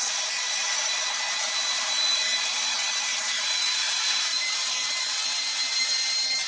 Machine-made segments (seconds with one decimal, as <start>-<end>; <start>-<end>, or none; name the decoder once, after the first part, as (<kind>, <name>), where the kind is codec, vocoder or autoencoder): 0.0-2.3 (vocoder, BigVGAN v2); 3.2-6.5